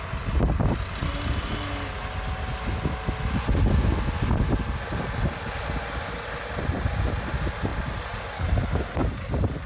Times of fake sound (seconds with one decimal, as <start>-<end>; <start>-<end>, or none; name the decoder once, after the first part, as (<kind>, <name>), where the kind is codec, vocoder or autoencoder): none